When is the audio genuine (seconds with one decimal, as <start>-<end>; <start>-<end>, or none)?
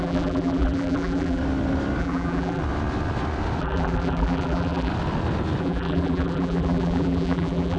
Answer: 1.4-2.0; 2.6-3.6; 4.9-5.6